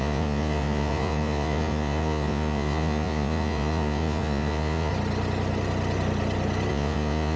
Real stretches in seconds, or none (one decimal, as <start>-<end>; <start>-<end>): 4.9-6.7